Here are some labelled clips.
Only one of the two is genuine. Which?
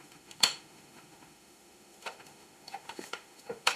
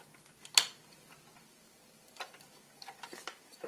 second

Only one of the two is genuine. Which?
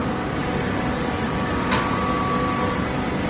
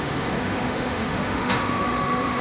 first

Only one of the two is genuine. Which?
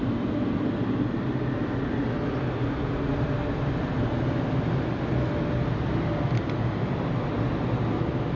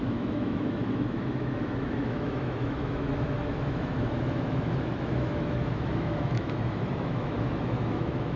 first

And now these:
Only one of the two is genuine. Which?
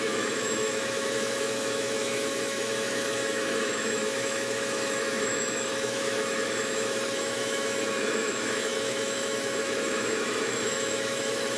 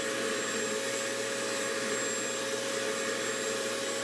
second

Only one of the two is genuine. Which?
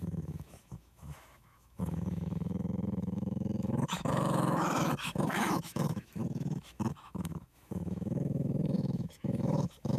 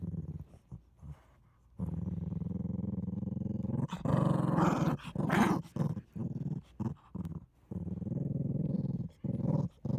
second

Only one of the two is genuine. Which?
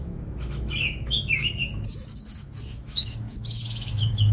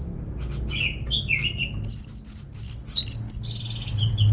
second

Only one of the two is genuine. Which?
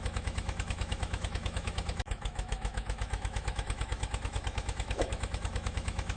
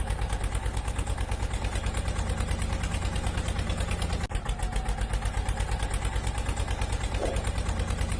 second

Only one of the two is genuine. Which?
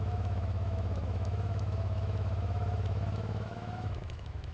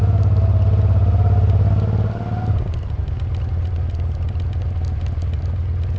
second